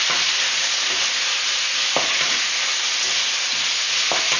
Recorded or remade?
recorded